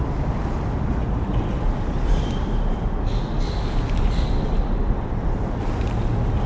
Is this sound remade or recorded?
recorded